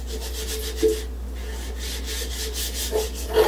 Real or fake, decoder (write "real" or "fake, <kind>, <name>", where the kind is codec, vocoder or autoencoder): real